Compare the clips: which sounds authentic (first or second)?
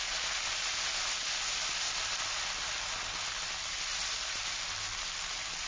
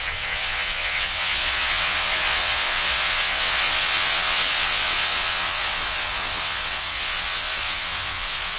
first